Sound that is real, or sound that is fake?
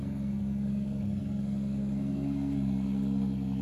fake